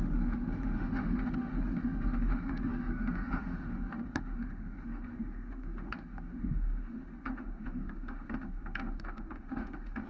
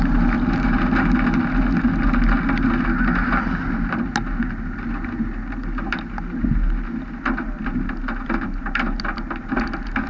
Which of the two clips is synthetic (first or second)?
first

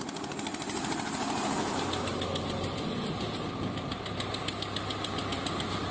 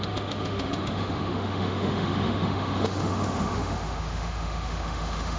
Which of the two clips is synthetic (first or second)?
second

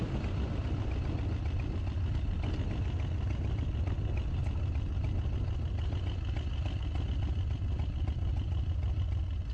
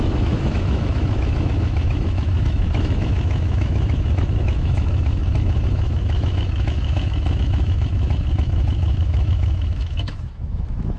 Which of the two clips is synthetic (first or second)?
second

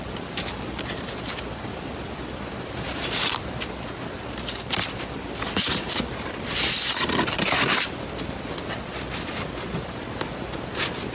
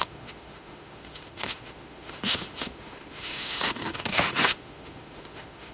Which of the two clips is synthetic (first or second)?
second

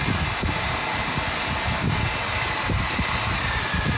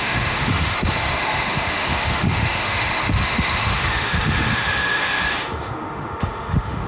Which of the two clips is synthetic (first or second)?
second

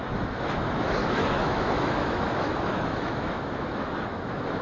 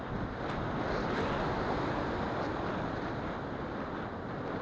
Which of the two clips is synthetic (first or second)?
first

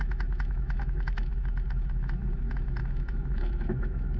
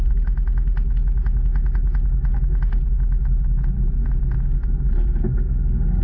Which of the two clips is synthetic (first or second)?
first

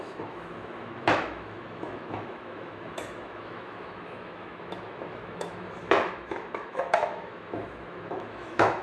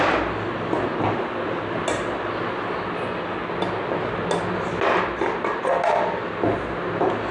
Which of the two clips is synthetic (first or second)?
first